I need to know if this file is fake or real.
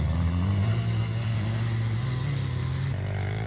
real